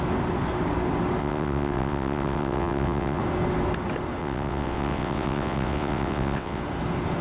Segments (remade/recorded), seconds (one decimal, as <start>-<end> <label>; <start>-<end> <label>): 0.0-1.2 recorded; 1.2-3.2 remade; 3.2-4.2 recorded; 4.2-6.6 remade; 6.6-7.2 recorded